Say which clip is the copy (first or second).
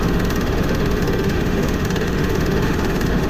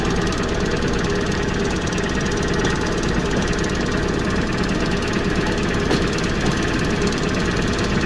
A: first